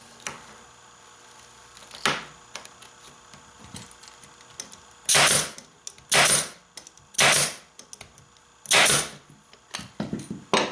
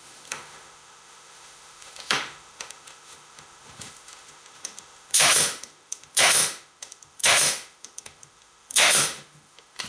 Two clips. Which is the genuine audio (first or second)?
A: first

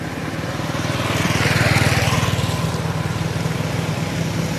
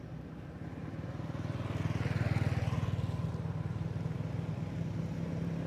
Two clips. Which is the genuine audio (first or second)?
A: second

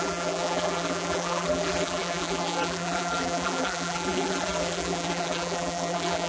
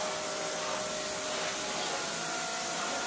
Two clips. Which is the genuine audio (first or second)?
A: second